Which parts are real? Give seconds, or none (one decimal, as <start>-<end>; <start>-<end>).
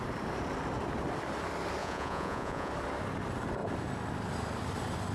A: 0.0-1.8; 2.7-5.1